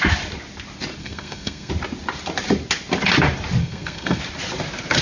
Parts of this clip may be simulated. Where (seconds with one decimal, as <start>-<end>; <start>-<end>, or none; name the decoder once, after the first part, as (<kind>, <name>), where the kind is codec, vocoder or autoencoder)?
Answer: 1.0-1.7 (codec, SNAC); 3.6-4.2